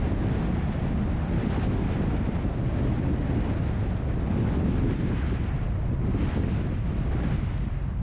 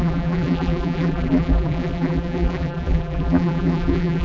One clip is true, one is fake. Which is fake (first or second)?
second